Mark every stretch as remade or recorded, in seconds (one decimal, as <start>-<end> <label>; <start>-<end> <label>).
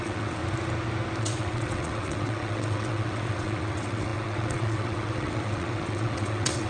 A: 0.0-0.4 remade; 0.4-1.2 recorded; 1.2-6.7 remade